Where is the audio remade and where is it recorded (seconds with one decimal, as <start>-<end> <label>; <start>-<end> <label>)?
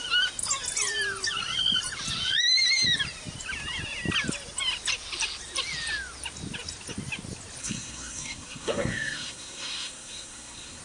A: 0.0-7.6 recorded; 7.6-10.8 remade